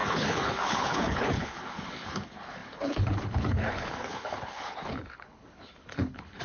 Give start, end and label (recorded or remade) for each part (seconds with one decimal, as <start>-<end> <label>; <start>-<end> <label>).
0.0-6.4 remade

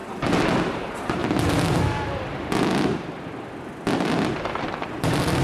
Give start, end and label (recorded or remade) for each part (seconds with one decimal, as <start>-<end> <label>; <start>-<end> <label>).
0.0-0.6 recorded; 0.6-1.2 remade; 1.2-4.4 recorded; 4.4-5.4 remade